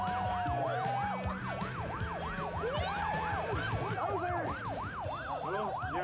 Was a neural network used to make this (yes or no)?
no